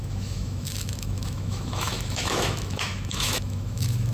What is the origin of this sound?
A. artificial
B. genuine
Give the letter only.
A